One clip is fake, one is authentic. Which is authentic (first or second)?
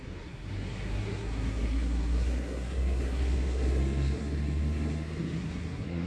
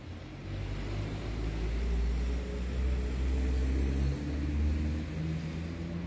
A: second